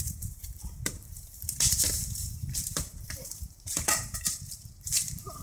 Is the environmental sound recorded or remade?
remade